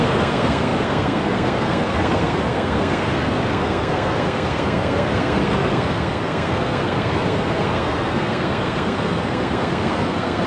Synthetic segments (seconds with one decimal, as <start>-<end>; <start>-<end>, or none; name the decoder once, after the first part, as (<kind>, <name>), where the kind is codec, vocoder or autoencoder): 0.0-10.5 (codec, SNAC)